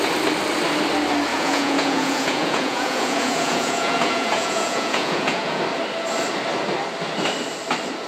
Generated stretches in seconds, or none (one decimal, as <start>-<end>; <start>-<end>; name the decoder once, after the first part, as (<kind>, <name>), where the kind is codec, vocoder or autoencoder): 1.3-5.6 (vocoder, Vocos)